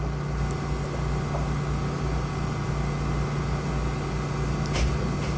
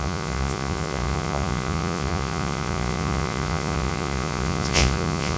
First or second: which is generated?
second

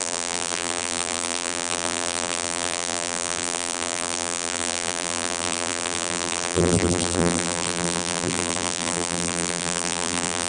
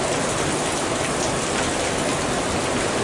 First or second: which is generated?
first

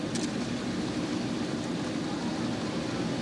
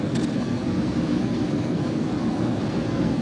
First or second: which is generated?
second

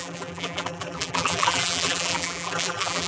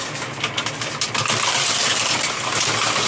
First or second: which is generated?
first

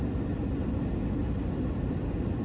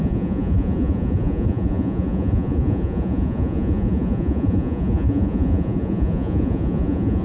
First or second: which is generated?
second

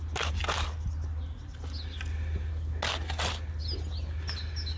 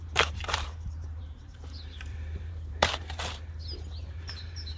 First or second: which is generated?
second